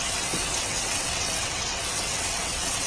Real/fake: fake